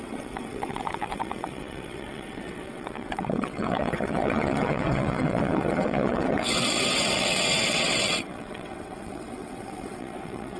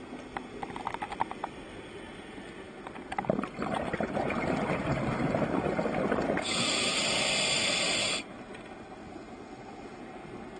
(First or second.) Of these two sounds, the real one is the second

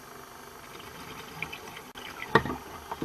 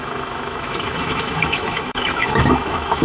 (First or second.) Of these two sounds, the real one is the first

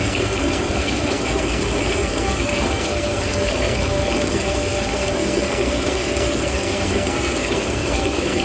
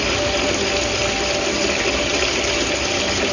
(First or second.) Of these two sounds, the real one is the second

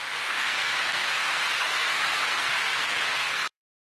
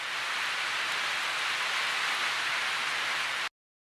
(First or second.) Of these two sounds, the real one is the second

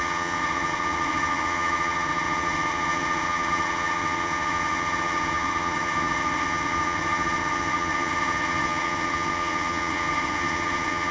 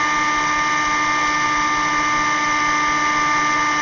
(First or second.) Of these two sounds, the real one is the second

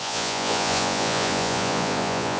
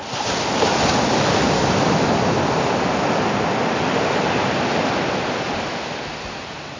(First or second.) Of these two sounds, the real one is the second